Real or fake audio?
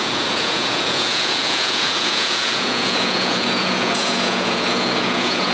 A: fake